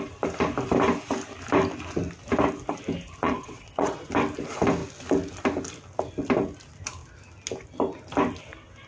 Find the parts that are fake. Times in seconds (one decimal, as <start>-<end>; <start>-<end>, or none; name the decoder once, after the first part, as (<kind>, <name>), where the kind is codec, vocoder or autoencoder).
3.2-4.1 (vocoder, Vocos)